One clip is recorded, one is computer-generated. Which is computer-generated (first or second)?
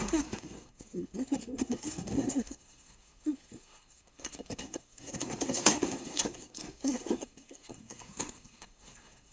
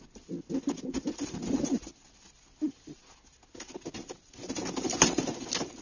first